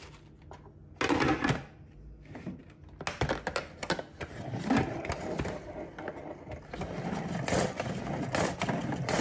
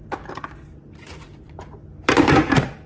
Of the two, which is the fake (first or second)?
second